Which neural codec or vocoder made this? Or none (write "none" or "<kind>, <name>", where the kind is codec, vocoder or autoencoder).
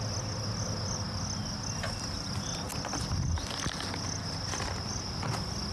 none